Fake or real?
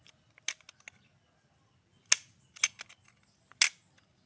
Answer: real